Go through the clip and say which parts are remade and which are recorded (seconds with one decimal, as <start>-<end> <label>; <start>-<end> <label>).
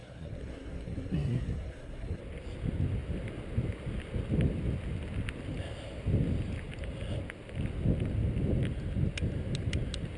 0.0-2.2 remade; 2.2-10.2 recorded